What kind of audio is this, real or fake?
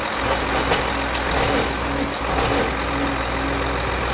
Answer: real